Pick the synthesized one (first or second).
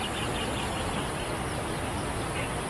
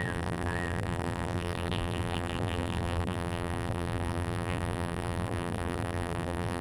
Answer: second